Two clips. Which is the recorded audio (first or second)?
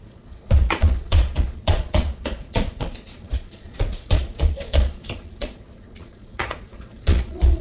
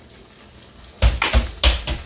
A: second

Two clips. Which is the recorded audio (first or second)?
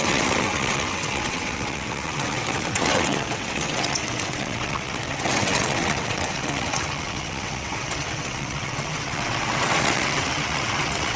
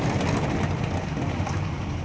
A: second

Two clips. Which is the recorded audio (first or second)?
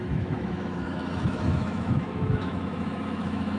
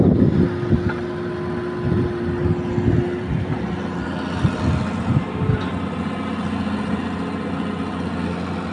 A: second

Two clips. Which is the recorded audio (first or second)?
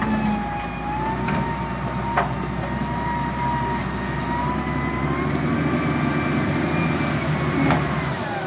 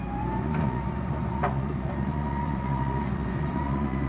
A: first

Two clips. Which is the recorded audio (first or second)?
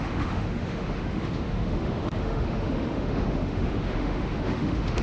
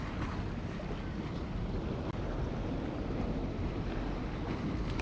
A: second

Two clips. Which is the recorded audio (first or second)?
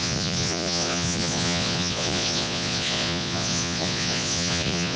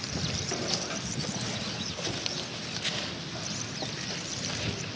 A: second